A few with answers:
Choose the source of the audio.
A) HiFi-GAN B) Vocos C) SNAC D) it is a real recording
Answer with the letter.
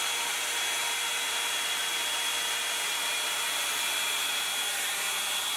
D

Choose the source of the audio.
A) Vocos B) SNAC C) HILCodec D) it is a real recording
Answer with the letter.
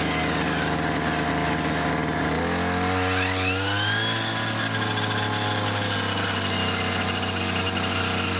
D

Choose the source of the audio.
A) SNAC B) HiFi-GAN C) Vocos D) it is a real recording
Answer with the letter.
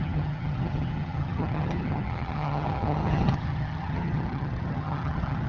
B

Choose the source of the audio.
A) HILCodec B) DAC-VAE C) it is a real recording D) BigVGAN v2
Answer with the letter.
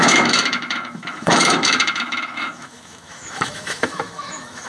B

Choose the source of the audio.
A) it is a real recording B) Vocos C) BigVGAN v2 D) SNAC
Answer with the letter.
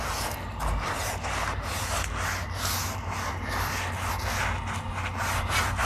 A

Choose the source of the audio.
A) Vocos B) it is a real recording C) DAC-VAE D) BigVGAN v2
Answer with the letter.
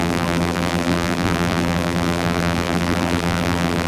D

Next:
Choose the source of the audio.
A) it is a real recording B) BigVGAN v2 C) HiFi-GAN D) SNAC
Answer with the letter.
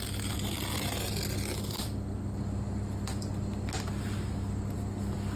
A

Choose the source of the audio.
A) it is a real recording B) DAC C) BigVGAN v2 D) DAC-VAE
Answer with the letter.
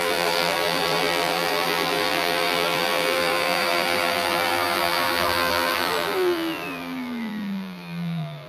C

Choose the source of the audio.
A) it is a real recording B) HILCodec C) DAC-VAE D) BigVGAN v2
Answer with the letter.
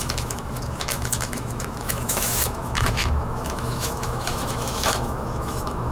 C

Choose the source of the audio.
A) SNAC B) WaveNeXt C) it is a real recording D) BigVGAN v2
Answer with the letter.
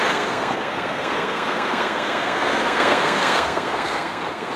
A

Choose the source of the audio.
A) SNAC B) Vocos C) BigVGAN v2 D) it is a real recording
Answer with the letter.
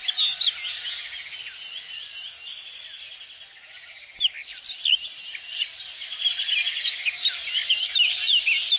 D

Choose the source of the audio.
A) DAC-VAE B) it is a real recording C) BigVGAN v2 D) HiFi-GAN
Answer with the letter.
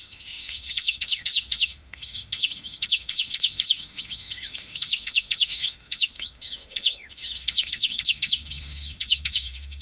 A